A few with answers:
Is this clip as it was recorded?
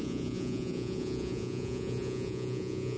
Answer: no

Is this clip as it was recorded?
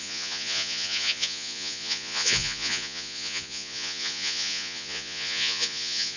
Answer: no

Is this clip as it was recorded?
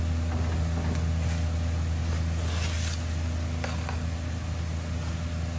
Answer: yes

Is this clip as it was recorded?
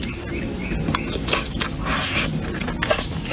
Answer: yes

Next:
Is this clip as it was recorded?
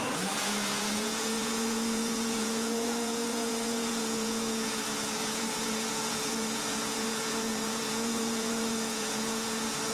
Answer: no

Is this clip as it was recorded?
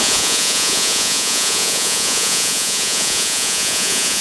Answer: no